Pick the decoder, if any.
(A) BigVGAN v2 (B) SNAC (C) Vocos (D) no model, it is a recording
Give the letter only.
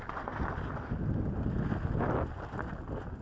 D